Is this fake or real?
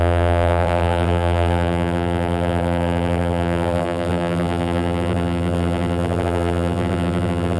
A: fake